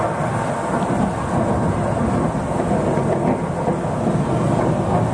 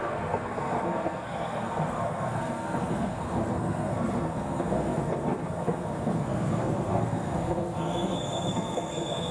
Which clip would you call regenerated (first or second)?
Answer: second